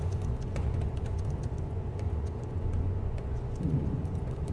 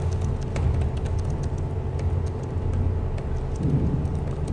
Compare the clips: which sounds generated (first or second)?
first